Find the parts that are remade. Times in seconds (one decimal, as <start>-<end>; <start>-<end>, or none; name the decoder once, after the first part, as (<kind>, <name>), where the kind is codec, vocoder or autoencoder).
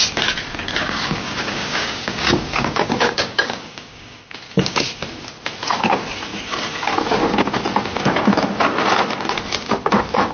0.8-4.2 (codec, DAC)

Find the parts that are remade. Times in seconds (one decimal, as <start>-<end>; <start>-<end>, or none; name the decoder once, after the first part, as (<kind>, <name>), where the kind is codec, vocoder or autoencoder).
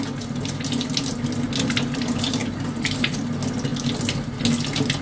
none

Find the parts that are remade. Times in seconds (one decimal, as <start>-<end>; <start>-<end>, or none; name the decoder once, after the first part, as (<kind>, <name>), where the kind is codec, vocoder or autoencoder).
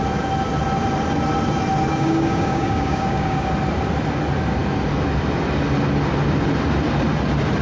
1.9-3.5 (codec, DAC)